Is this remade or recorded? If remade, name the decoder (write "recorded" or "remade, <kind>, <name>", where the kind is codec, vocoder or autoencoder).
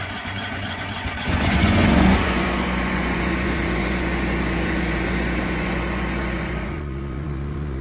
remade, vocoder, Vocos